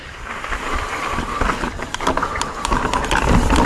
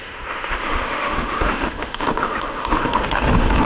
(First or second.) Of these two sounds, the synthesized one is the second